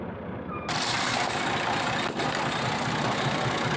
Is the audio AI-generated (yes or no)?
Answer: no